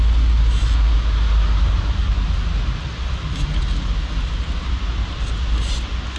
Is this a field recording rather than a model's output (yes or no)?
yes